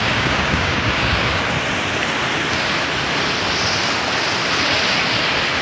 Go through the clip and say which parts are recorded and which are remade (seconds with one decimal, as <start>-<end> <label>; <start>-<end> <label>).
0.0-1.5 remade; 1.5-5.6 recorded